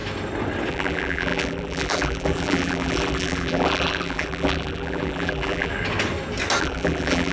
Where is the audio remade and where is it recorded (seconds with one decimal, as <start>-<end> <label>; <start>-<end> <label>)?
0.0-0.7 recorded; 0.7-5.7 remade; 5.7-6.6 recorded; 6.6-7.3 remade